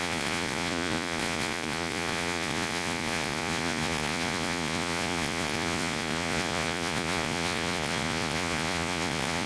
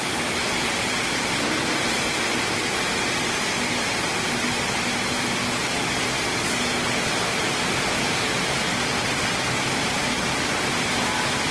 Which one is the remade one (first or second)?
first